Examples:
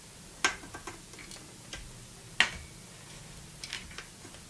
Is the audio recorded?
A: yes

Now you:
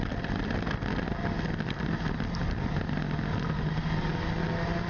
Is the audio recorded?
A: yes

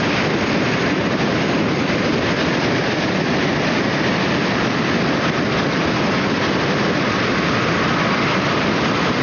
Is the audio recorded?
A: no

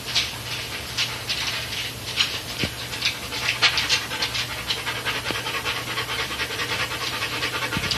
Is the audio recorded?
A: no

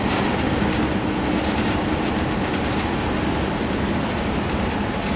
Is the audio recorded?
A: yes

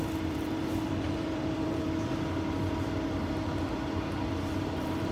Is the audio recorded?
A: no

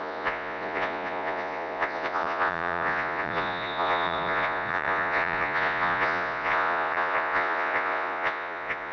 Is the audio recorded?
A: no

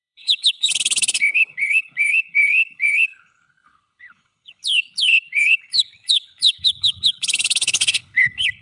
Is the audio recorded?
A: no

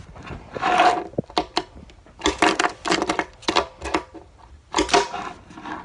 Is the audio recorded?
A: yes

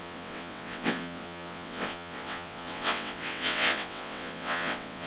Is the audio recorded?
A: no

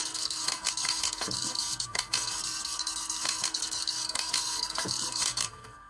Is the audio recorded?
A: no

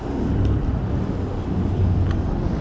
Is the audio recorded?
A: yes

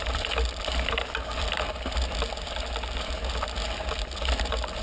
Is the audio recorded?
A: yes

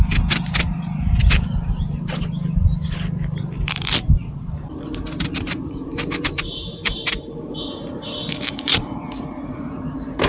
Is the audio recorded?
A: no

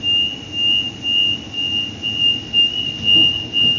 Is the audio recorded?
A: yes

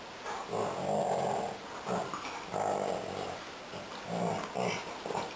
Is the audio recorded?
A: yes